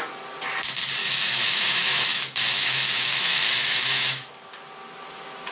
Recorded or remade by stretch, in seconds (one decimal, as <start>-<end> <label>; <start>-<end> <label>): 0.0-1.0 recorded; 1.0-4.3 remade; 4.3-5.5 recorded